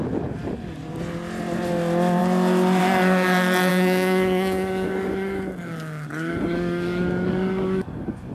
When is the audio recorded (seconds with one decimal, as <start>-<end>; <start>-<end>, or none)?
0.0-3.7